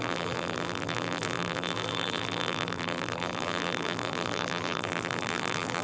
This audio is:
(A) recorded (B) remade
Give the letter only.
B